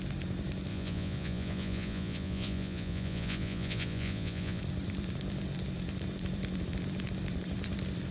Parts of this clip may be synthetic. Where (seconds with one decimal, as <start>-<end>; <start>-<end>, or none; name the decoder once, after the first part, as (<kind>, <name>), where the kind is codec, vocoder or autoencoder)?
0.7-4.6 (vocoder, Vocos)